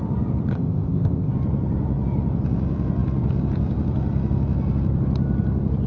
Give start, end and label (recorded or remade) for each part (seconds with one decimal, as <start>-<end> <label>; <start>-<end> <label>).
0.0-0.5 recorded; 0.5-1.3 remade; 1.3-5.9 recorded